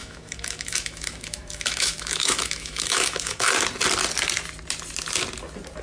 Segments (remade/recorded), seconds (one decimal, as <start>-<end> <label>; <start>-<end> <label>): 0.0-3.5 remade; 3.5-5.8 recorded